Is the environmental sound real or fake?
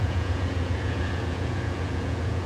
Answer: fake